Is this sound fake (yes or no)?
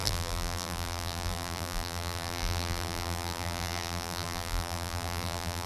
yes